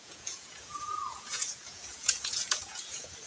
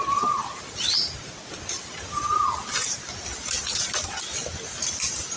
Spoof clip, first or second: first